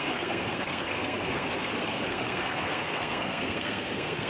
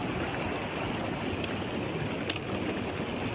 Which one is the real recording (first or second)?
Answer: second